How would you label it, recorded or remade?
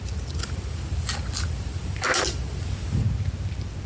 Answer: recorded